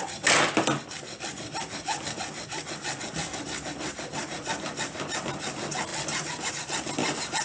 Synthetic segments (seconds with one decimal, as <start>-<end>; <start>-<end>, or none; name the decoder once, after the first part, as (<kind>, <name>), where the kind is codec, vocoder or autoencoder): none

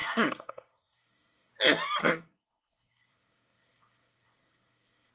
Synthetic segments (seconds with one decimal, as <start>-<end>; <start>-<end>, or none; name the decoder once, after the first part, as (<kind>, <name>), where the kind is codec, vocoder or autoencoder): 0.0-1.5 (codec, SNAC); 2.0-5.1

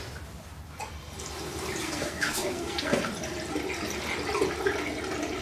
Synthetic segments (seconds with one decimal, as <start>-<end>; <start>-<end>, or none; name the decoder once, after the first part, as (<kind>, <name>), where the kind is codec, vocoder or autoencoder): 1.8-3.1 (codec, SNAC)

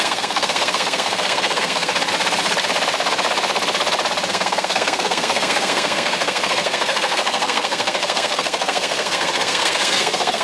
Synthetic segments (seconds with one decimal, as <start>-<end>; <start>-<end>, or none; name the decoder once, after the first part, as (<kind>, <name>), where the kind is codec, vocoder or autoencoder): 0.0-1.9 (codec, SNAC); 4.3-10.4